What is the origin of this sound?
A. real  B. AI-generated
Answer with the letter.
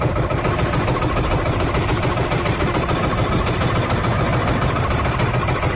A